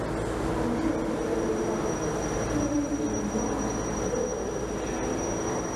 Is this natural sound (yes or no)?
yes